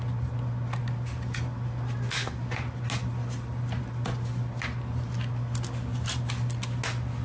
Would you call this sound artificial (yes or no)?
no